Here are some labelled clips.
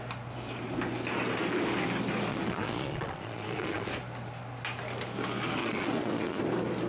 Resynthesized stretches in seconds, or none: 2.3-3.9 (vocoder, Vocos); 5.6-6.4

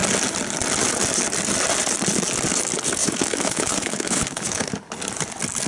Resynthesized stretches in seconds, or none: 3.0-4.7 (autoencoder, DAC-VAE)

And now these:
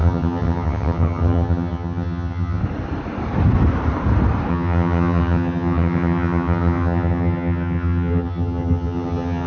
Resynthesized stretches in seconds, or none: 0.0-2.6 (vocoder, HiFi-GAN); 4.5-9.5

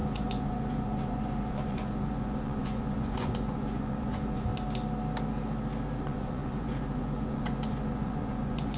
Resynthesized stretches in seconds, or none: 0.0-4.5 (vocoder, Vocos); 6.0-8.8

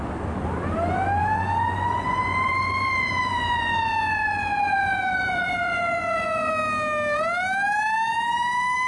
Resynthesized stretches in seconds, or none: 1.2-6.5 (vocoder, Vocos)